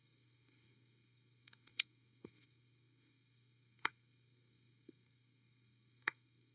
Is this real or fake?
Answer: fake